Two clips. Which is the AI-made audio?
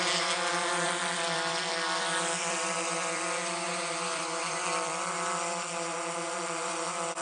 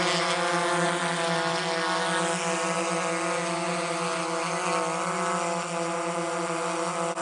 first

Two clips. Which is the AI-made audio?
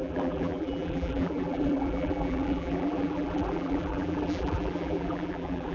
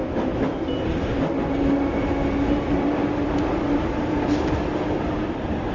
first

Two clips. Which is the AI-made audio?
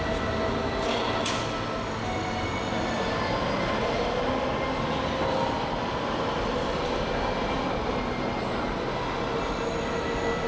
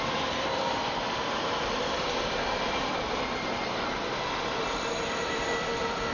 second